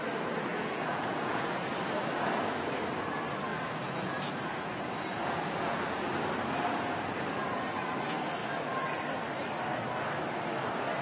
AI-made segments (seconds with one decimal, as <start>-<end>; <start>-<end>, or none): 0.5-1.7; 3.5-6.0